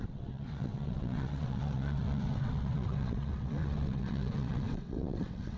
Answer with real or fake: fake